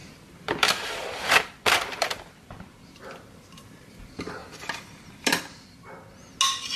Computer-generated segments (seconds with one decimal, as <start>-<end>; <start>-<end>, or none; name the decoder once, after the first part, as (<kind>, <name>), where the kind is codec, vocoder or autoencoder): 0.0-3.2 (vocoder, BigVGAN v2); 4.4-5.4